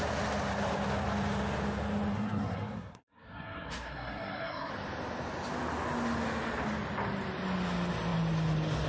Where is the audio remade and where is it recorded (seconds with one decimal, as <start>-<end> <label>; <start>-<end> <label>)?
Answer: 0.0-2.1 recorded; 2.1-4.7 remade; 4.7-8.9 recorded